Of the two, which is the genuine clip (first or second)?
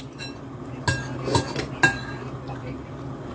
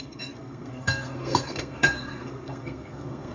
first